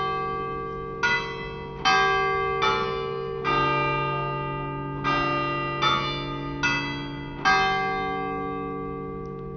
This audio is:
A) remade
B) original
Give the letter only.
B